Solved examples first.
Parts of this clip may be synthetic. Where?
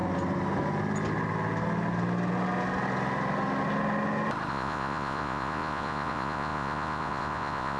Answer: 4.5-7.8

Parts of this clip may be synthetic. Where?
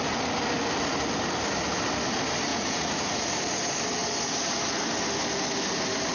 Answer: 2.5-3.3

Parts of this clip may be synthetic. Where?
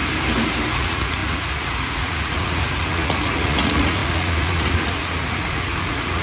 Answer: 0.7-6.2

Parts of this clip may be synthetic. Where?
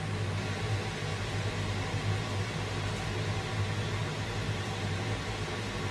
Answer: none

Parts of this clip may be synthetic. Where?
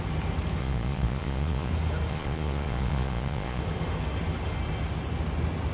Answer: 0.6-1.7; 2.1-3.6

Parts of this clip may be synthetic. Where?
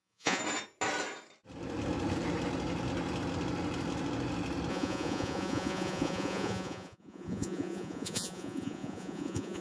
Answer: 0.0-0.4; 4.7-9.6